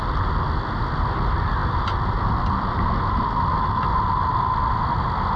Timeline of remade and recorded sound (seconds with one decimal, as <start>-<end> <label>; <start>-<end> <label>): 0.0-5.4 recorded